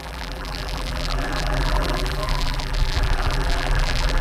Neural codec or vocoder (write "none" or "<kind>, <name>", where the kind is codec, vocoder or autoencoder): vocoder, BigVGAN v2